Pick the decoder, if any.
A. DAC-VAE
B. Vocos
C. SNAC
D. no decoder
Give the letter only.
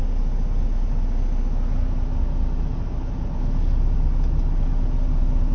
D